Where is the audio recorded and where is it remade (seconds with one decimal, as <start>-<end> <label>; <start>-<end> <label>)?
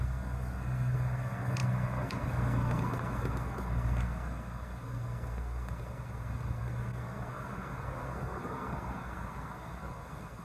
0.0-10.4 remade